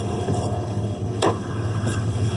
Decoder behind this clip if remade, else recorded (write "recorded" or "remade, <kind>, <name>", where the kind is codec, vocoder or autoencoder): remade, codec, HILCodec